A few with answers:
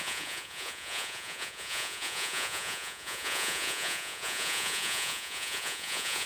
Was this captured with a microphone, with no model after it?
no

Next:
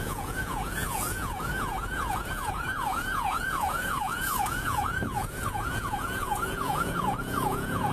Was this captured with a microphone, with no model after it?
no